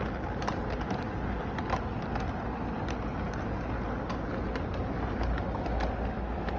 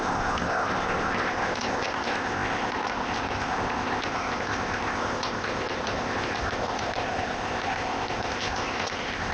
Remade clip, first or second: second